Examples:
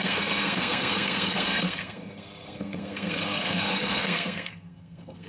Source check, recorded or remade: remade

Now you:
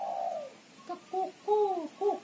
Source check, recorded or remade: recorded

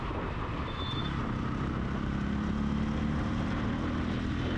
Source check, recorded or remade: recorded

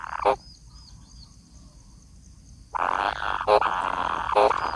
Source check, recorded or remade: recorded